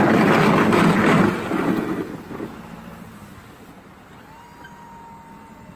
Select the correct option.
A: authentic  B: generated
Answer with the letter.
A